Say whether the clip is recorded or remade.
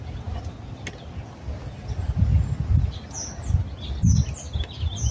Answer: recorded